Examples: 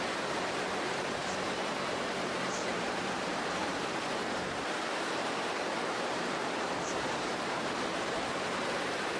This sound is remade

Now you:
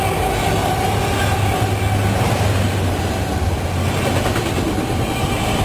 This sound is recorded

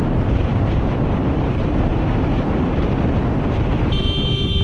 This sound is remade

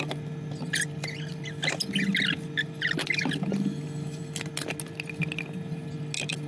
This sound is recorded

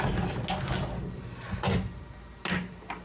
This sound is recorded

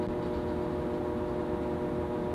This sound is recorded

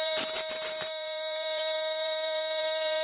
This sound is remade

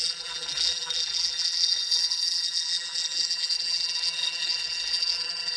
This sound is remade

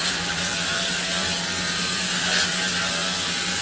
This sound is remade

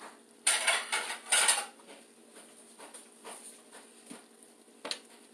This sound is recorded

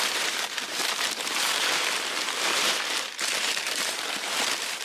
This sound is remade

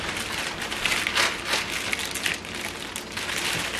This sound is recorded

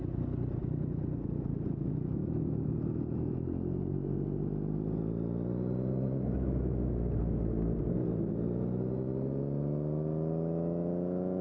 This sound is recorded